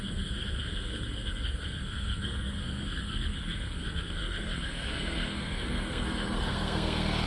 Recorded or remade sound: remade